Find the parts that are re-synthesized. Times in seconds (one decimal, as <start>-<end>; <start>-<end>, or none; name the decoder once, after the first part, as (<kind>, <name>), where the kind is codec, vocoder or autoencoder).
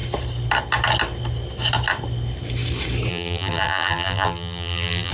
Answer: 3.1-5.1 (vocoder, BigVGAN v2)